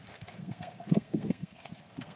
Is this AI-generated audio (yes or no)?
yes